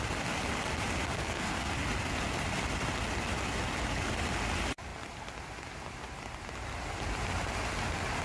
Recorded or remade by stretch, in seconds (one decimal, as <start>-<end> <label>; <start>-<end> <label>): 0.0-1.1 recorded; 1.1-1.7 remade; 1.7-8.2 recorded